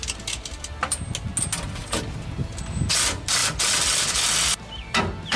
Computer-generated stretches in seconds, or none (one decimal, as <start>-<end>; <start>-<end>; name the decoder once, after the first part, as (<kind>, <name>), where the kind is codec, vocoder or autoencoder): none